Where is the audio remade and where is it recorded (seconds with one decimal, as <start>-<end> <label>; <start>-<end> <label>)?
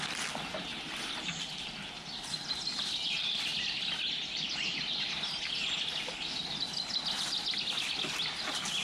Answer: 0.0-8.8 recorded